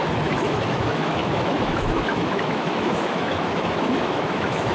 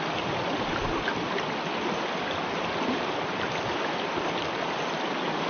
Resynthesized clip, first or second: first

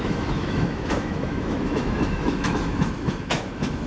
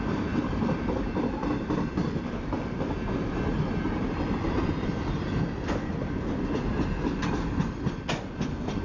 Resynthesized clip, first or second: first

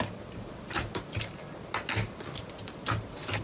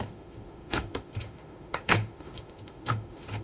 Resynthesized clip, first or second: second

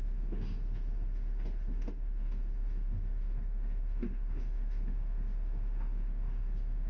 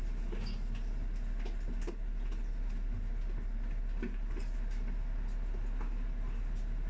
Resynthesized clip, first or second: first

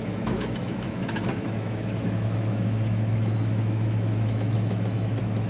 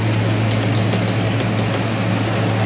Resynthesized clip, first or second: first